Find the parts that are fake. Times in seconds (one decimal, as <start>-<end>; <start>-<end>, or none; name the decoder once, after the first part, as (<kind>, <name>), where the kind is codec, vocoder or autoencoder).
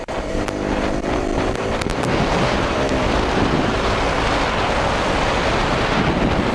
none